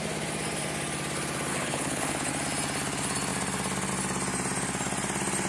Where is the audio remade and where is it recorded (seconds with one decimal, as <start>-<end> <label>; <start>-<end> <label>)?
0.0-1.5 recorded; 1.5-2.3 remade; 2.3-5.5 recorded